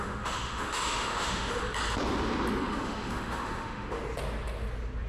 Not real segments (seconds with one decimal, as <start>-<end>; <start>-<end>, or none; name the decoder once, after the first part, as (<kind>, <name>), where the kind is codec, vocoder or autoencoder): 0.0-1.6 (autoencoder, DAC-VAE); 2.6-4.0